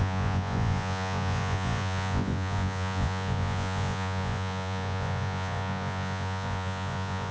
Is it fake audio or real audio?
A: fake